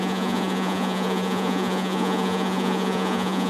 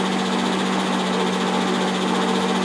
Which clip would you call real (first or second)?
second